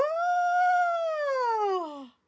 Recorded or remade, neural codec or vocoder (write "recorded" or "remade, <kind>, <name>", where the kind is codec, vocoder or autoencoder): recorded